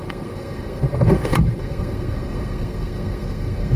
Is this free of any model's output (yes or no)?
no